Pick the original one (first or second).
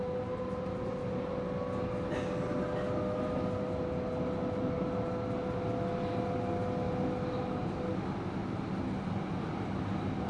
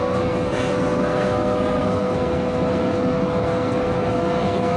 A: first